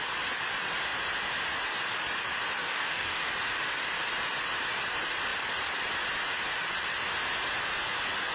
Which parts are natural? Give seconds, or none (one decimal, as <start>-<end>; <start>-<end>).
0.0-2.6; 3.3-8.3